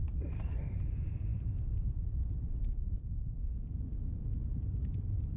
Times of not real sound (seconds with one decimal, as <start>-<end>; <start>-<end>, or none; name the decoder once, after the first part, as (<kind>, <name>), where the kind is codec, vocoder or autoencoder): 0.0-0.8 (vocoder, BigVGAN v2); 1.3-4.5